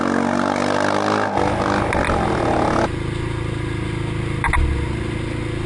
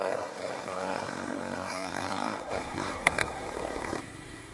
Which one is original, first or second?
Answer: first